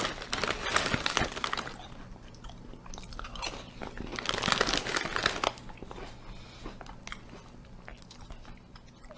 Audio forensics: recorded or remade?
recorded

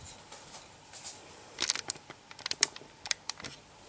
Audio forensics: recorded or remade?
recorded